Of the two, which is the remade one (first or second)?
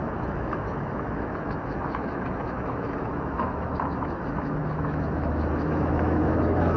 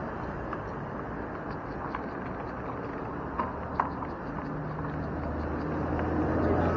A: first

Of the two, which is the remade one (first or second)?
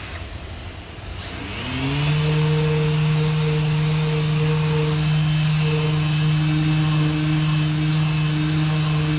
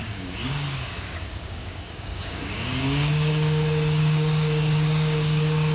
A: second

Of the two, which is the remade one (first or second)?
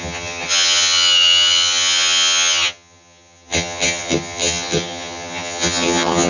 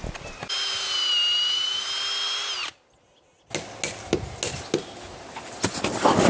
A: first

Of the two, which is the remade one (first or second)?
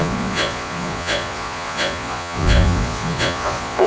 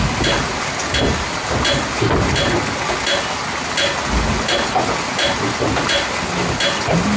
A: first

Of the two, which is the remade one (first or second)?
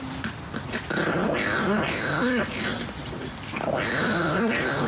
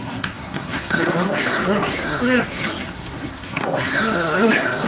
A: second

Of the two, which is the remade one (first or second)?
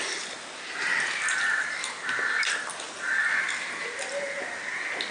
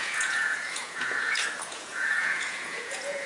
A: second